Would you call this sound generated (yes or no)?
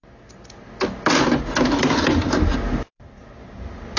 no